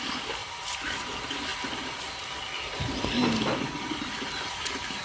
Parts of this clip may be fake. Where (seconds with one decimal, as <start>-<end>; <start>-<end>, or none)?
0.0-1.5; 4.5-5.0